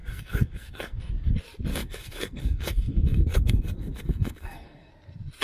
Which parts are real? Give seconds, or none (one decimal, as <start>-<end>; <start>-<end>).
1.1-1.7; 4.9-5.4